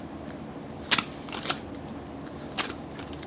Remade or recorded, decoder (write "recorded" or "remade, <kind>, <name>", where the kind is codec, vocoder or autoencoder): recorded